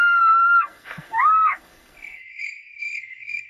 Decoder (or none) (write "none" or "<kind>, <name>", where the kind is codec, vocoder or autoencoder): codec, SNAC